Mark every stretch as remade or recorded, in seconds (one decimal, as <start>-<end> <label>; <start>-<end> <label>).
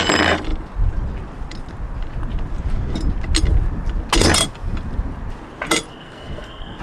0.0-5.9 recorded; 5.9-6.8 remade